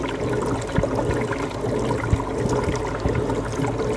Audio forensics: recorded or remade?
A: recorded